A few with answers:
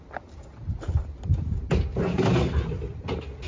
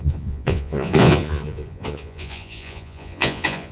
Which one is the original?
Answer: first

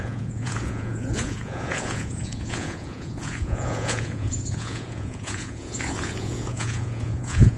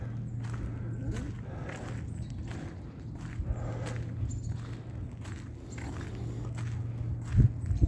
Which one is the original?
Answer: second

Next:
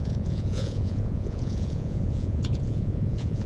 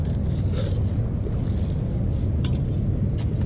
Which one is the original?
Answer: second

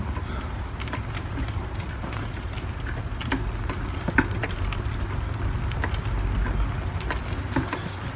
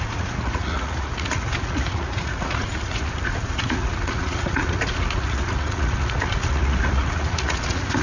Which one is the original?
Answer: first